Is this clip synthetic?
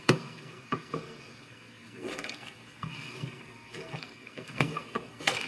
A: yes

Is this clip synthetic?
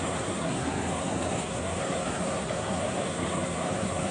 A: yes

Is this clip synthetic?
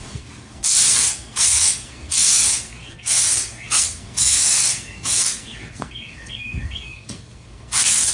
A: yes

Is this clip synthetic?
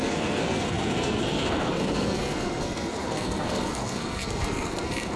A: yes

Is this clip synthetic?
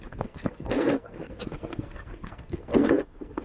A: yes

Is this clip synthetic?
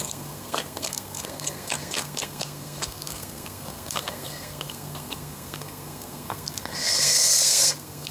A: yes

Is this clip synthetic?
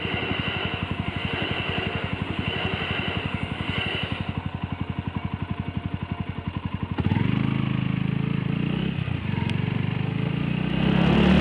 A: no